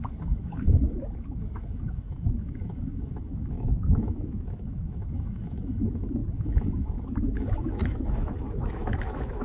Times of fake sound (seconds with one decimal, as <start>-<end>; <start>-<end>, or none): 0.0-9.4